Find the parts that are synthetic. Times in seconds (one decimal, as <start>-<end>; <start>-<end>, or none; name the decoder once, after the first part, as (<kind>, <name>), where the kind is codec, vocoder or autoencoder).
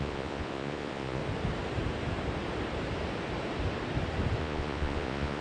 0.0-1.2 (vocoder, Vocos); 4.4-5.4